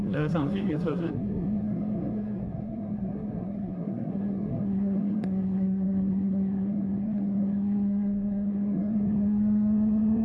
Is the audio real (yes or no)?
no